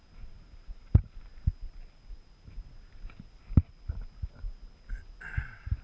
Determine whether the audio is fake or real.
real